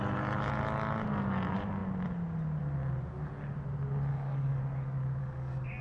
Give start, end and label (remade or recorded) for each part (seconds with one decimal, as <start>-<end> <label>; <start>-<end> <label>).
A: 0.0-4.1 recorded; 4.1-4.6 remade; 4.6-5.2 recorded; 5.2-5.8 remade

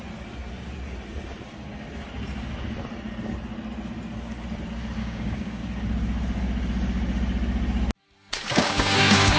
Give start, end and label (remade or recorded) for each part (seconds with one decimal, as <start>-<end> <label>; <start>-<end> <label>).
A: 0.0-5.0 recorded; 5.0-5.6 remade; 5.6-8.5 recorded; 8.5-9.4 remade